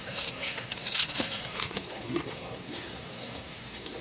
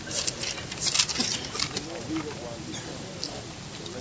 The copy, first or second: first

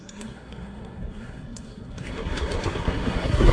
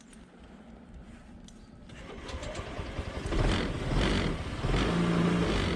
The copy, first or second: first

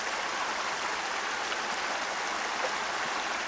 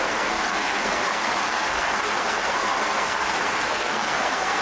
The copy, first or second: second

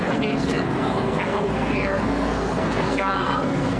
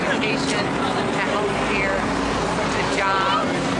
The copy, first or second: first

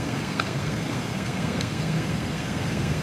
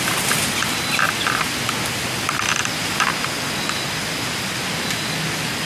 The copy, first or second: first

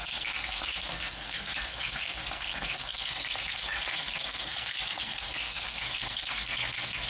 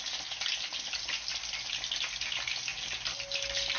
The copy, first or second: first